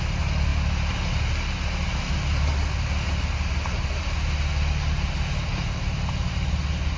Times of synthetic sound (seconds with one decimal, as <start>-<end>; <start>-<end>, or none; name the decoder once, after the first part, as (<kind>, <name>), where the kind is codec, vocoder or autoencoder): none